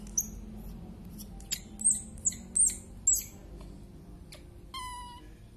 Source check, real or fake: real